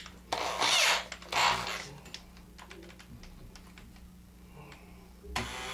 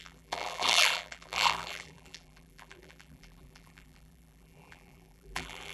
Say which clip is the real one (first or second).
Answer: first